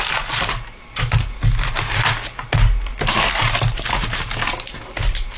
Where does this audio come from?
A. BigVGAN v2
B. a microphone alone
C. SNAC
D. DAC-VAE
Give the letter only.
B